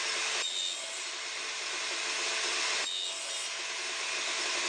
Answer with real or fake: real